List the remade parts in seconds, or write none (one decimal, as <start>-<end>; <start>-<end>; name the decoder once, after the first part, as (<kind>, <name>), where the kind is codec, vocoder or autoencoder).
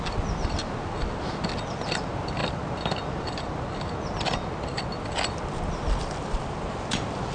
none